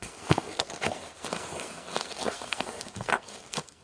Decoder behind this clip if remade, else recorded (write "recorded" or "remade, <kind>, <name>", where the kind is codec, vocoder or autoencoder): remade, codec, SNAC